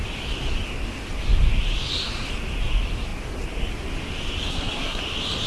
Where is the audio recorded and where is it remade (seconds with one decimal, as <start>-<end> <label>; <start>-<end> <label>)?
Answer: 0.0-4.5 recorded; 4.5-5.0 remade; 5.0-5.5 recorded